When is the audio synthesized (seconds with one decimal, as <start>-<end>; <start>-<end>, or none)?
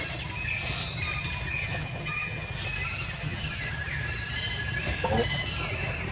1.6-2.5; 3.2-3.7